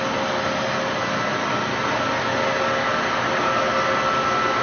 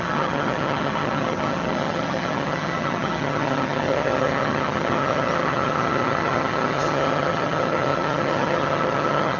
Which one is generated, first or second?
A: second